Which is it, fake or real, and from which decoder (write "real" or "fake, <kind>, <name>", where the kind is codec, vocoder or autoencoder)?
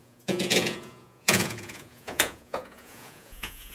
fake, vocoder, Vocos